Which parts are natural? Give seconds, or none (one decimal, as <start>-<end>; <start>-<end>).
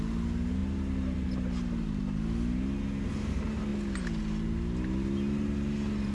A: 0.0-6.1